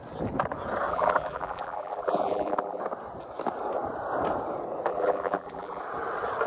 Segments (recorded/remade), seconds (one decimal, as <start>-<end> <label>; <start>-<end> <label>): 0.0-0.9 recorded; 0.9-2.8 remade; 2.8-4.9 recorded; 4.9-5.8 remade; 5.8-6.5 recorded